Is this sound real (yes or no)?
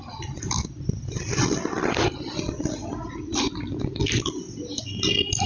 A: no